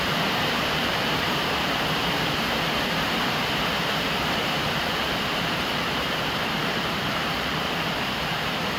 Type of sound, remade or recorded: remade